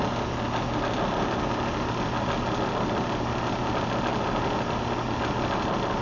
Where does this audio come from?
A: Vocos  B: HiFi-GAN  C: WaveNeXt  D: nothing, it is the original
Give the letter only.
D